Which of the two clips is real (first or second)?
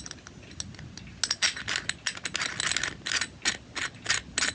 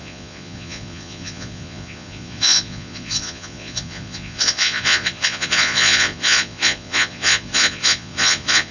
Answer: first